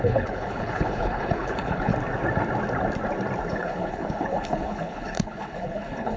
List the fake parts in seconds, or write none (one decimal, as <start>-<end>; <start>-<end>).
0.0-1.9; 3.5-6.2